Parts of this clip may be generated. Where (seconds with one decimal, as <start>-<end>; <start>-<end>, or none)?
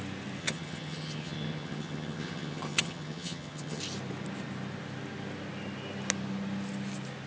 0.4-3.8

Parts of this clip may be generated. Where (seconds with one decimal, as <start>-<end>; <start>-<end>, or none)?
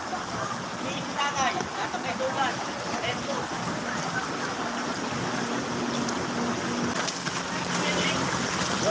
none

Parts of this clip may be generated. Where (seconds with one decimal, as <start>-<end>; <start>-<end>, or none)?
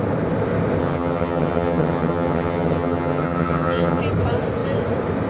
0.8-4.0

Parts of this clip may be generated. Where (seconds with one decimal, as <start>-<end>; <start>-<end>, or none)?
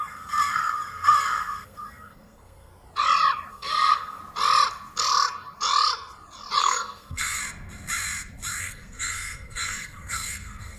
0.0-2.7; 3.5-4.2; 6.6-7.4; 8.6-10.8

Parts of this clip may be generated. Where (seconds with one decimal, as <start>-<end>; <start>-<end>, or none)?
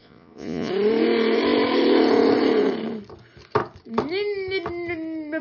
0.0-0.7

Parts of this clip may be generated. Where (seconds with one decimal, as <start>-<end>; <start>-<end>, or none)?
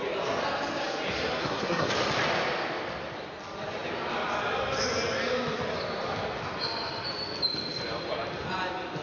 1.4-1.9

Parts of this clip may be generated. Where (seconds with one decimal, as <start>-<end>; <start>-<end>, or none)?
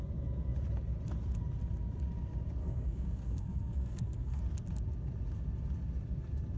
2.6-4.4